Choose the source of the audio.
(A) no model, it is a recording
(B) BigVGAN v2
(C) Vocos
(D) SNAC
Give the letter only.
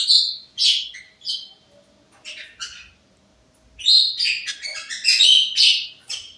A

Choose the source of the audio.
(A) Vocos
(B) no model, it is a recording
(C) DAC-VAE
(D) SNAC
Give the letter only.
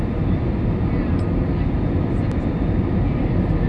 B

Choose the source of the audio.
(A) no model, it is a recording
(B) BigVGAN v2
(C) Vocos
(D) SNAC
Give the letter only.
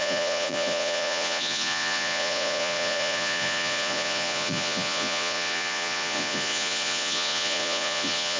C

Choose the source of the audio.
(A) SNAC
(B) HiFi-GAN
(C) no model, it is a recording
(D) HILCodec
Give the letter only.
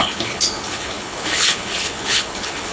D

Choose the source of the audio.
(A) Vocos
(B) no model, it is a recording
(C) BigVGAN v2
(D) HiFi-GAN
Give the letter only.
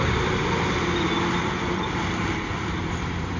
C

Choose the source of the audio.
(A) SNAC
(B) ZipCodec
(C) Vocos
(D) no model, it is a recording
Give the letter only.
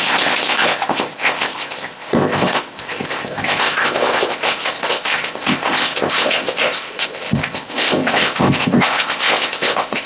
B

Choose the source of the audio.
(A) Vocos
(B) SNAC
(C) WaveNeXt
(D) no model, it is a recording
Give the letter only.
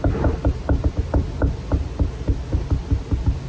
D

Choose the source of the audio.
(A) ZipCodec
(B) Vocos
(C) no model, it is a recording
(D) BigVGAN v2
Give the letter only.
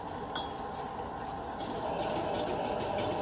C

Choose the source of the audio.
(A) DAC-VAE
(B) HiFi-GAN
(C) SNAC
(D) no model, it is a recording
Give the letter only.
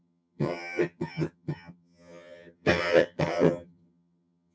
B